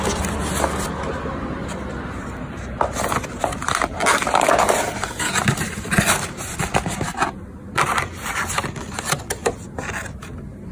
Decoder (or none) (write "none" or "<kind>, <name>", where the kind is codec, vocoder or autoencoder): none